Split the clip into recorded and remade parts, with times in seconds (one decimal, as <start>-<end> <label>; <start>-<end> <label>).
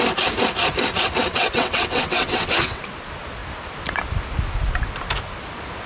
0.0-1.3 recorded; 1.3-2.8 remade; 2.8-5.9 recorded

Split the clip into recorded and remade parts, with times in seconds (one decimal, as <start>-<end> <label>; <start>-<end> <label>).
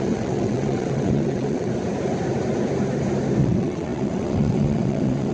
0.0-1.7 remade; 1.7-3.4 recorded; 3.4-5.3 remade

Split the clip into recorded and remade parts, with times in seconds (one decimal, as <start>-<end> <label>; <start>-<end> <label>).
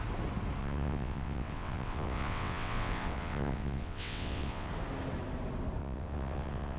0.0-0.6 recorded; 0.6-4.7 remade; 4.7-5.8 recorded; 5.8-6.8 remade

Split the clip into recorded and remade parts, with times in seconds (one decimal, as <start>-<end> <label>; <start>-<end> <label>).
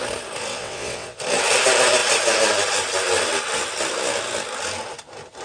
0.0-0.5 recorded; 0.5-1.2 remade; 1.2-5.4 recorded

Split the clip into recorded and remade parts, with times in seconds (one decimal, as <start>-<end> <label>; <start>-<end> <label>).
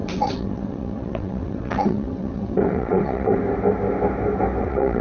0.0-3.4 remade; 3.4-4.6 recorded; 4.6-5.0 remade